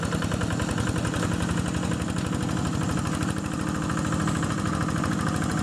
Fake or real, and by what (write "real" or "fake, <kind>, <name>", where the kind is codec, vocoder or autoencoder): real